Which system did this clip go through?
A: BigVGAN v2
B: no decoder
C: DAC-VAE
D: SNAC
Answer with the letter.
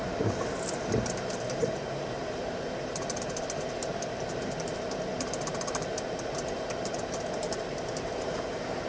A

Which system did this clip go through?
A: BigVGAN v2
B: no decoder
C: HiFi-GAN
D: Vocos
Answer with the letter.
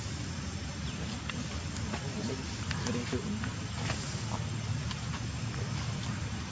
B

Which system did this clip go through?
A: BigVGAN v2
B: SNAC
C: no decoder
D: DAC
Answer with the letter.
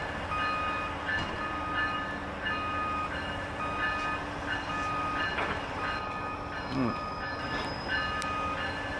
C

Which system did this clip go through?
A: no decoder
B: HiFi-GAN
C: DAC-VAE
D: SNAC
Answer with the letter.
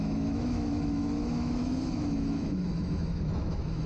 C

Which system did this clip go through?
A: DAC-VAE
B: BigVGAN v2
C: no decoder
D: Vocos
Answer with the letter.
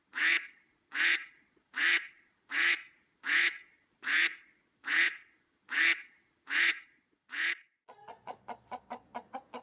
D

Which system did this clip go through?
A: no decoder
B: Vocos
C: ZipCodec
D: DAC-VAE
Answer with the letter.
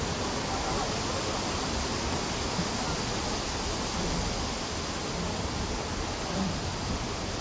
A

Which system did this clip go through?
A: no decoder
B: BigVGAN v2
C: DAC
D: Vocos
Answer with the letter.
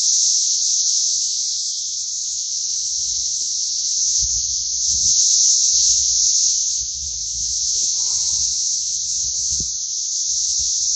D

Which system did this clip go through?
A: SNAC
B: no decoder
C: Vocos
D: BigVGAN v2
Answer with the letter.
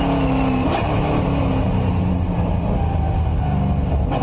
B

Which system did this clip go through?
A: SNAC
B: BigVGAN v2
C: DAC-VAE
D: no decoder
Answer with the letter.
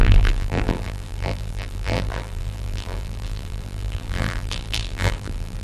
B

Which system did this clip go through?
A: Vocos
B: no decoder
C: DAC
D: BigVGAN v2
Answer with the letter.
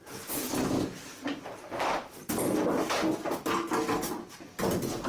B